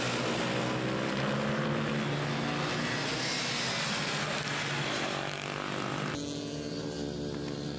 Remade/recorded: recorded